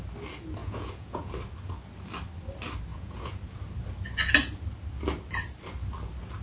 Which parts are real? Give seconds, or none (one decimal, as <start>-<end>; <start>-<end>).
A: 0.0-0.6; 1.3-2.9; 3.4-6.4